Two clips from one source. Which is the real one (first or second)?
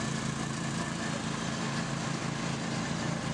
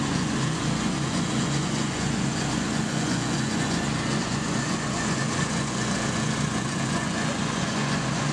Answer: first